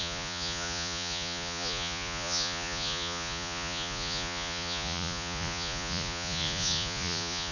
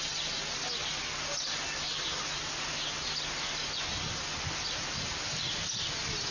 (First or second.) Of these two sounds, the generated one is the first